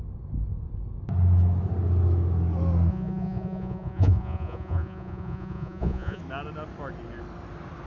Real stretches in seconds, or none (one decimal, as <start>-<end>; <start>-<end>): 0.0-2.9; 6.2-7.9